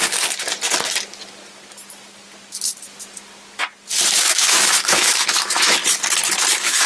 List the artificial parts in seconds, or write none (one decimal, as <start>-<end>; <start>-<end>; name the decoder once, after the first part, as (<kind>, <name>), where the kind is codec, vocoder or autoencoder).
4.1-5.8 (autoencoder, DAC-VAE); 6.5-6.9